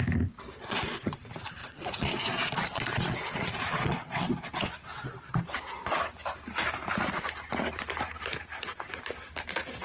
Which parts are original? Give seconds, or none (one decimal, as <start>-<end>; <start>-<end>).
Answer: 0.0-0.6; 1.2-1.6; 4.3-9.8